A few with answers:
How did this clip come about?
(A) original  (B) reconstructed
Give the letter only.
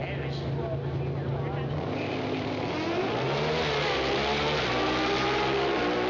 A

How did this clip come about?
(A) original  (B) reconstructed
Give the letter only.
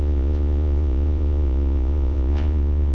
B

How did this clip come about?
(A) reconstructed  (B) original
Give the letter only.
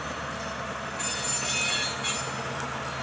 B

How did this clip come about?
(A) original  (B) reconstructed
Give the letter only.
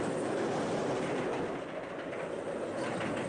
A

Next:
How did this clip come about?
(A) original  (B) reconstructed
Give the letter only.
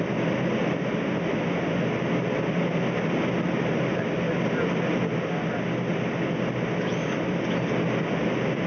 A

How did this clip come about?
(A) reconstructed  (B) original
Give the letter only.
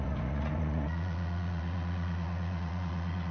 A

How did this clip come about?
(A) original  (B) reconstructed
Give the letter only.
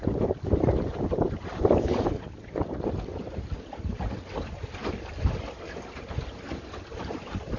A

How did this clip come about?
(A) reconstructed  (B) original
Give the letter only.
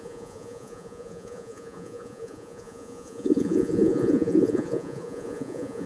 A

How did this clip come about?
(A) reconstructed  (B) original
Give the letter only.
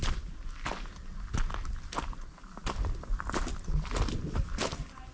B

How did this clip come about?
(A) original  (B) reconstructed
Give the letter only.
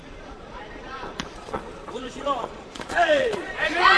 B